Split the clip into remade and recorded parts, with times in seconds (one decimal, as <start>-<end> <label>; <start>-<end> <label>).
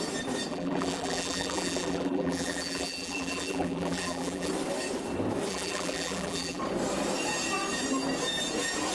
0.0-0.5 recorded; 0.5-4.5 remade; 4.5-5.5 recorded; 5.5-6.6 remade; 6.6-8.9 recorded